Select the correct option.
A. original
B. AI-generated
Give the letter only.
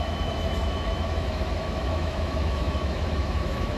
B